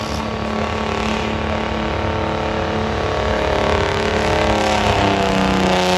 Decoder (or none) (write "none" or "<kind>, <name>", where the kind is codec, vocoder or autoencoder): none